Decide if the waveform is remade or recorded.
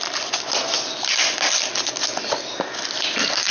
recorded